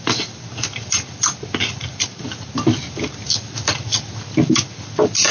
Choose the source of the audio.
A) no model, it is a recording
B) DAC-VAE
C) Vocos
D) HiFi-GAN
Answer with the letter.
A